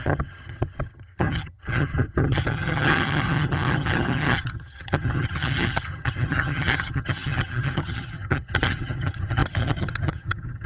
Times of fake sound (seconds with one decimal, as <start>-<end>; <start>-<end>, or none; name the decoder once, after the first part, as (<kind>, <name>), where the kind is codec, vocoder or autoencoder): 0.0-10.7 (vocoder, HiFi-GAN)